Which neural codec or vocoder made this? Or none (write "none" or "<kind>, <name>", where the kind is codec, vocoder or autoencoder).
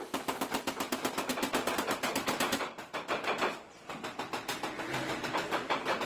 none